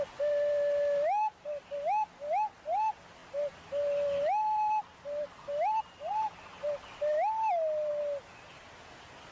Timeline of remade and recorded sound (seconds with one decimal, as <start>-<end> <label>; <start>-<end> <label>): 0.0-9.3 recorded